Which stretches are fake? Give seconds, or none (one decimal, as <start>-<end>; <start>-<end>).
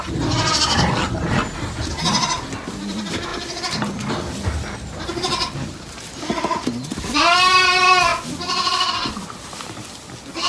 3.3-3.9